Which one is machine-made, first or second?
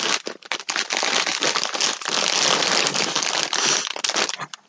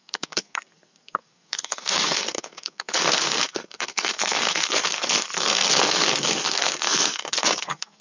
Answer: second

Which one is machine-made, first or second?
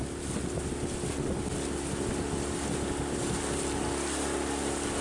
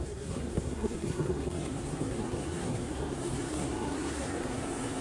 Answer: second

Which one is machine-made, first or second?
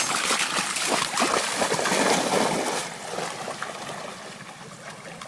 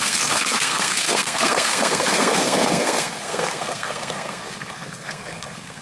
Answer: second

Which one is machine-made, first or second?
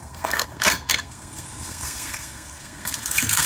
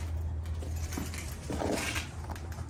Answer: first